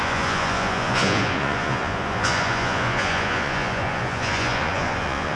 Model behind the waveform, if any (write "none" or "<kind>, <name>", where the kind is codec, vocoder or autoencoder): vocoder, Vocos